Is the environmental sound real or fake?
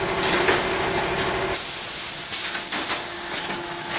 real